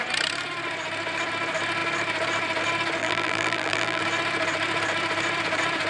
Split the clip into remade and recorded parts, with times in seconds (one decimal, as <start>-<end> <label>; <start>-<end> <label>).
0.0-3.0 recorded; 3.0-4.0 remade; 4.0-5.9 recorded